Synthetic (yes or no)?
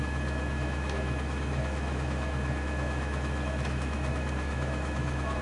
yes